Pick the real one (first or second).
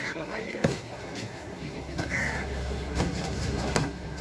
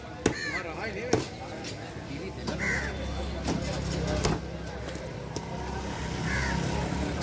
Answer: second